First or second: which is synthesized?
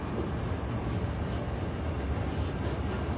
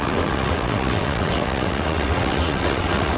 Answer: second